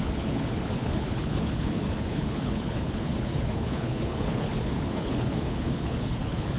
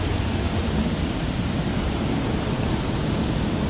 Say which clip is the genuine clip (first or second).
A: second